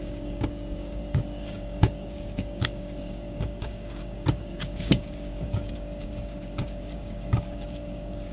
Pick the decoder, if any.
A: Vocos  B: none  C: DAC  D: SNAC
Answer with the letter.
C